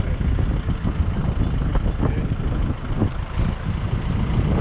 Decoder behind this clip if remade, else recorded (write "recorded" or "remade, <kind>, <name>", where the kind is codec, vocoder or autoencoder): recorded